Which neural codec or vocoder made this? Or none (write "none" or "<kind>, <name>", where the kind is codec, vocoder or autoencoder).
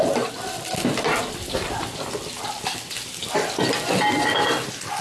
none